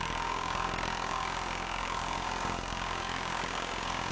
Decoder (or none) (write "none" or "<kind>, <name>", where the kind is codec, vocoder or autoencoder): codec, DAC